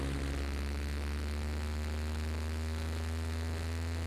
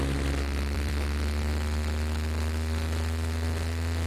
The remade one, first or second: second